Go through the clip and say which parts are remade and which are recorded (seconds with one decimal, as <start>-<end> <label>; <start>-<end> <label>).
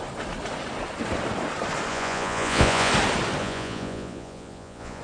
0.0-1.9 recorded; 1.9-2.9 remade; 2.9-3.4 recorded; 3.4-5.0 remade